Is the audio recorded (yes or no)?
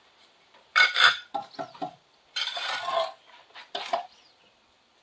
no